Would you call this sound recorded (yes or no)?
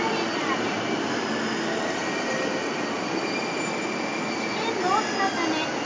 yes